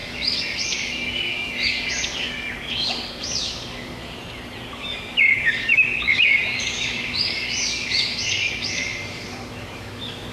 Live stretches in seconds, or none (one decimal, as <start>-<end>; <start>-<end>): 4.0-4.7